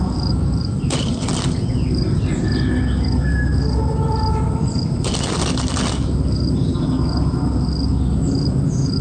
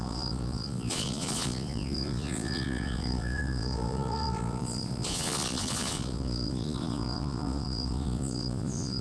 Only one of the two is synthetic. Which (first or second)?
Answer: second